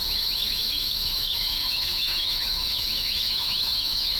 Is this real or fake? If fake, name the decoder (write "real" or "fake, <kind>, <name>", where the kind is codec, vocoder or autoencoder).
fake, autoencoder, DAC-VAE